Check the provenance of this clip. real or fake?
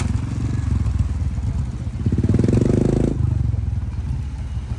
real